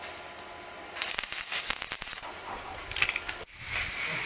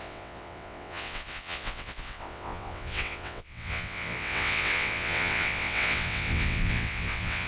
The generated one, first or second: second